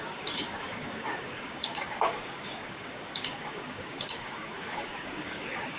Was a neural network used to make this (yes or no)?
yes